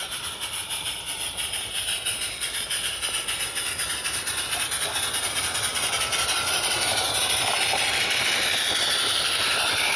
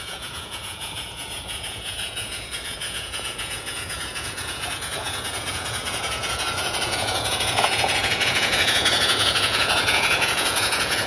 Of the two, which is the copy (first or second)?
second